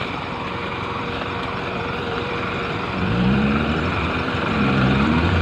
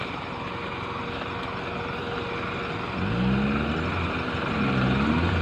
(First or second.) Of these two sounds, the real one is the second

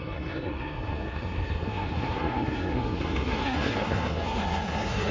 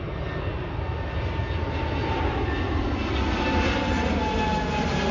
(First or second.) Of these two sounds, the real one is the second